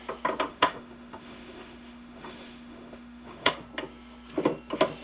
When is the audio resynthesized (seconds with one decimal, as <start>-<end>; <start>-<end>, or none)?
0.5-3.5